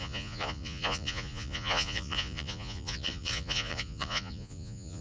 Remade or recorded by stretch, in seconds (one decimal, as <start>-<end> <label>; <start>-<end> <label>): 0.0-5.0 remade